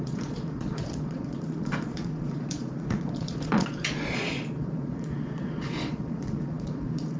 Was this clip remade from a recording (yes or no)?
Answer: yes